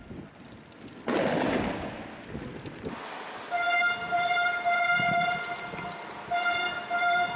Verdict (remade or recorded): recorded